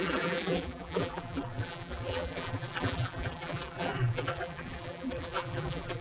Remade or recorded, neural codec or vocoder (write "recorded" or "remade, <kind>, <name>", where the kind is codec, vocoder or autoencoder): remade, vocoder, BigVGAN v2